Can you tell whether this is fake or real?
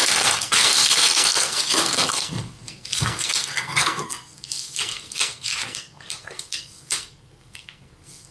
fake